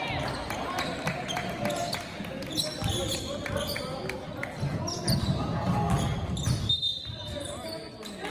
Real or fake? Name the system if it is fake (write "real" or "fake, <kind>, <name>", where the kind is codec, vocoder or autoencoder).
real